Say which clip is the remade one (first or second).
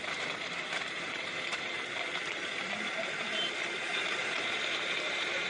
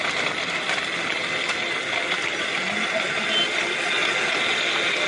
first